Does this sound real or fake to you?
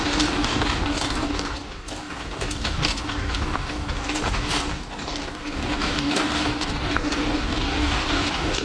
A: fake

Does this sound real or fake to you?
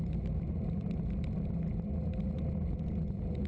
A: real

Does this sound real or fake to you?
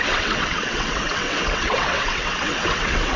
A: fake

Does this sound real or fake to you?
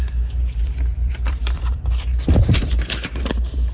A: fake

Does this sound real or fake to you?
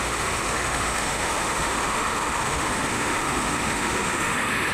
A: fake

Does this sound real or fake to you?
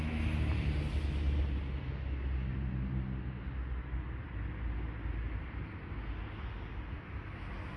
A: real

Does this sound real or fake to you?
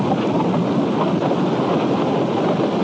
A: real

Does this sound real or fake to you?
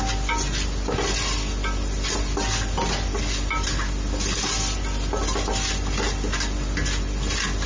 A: real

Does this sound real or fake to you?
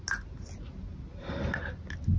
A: real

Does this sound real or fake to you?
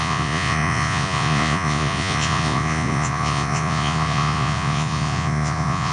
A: fake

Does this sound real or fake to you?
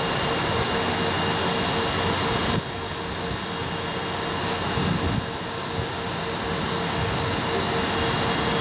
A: real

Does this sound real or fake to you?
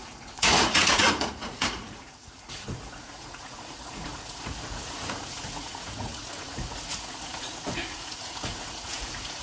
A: fake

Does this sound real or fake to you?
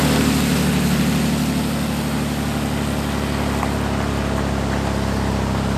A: real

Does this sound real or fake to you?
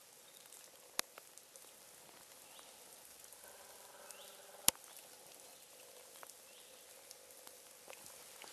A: real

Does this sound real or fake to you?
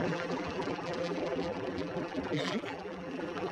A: fake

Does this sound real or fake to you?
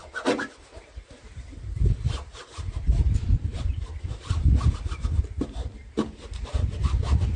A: real